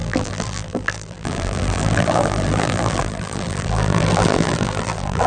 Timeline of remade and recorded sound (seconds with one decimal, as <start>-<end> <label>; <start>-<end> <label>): 0.0-5.3 remade